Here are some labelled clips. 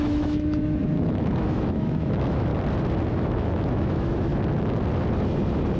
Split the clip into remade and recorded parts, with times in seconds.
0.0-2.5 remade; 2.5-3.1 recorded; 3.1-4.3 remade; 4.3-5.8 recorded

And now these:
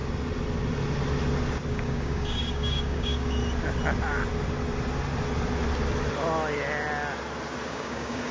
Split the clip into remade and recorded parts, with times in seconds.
0.0-1.7 recorded; 1.7-3.4 remade; 3.4-7.7 recorded; 7.7-8.3 remade